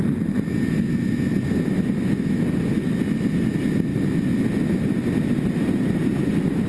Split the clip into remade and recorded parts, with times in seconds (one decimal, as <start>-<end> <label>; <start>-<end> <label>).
0.0-6.7 recorded